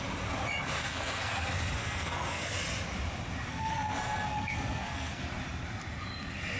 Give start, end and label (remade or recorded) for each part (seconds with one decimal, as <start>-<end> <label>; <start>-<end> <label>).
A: 0.0-0.8 recorded; 0.8-1.3 remade; 1.3-1.8 recorded; 1.8-2.5 remade; 2.5-3.5 recorded; 3.5-5.2 remade; 5.2-6.6 recorded